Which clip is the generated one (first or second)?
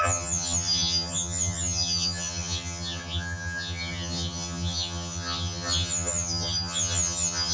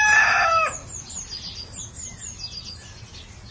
first